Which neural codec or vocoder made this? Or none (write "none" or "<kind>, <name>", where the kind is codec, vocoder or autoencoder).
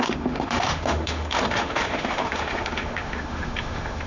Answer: autoencoder, DAC-VAE